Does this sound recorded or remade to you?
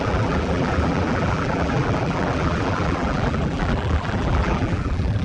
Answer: remade